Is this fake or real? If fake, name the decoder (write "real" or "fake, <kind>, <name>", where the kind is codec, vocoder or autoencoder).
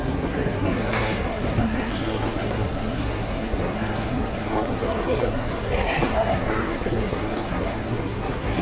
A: fake, codec, SNAC